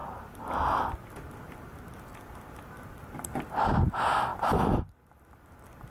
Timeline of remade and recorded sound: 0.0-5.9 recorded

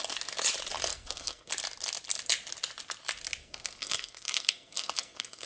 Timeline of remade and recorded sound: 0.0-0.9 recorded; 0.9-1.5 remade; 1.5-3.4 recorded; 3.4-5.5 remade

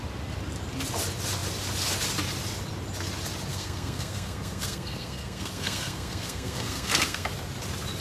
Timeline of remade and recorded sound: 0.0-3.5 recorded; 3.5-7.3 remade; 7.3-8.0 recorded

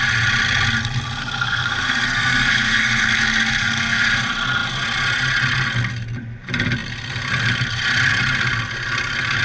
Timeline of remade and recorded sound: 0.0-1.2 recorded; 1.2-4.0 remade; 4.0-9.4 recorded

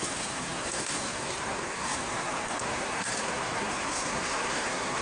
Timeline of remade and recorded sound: 0.0-5.0 remade